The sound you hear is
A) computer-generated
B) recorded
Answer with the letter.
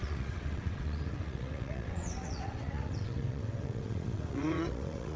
A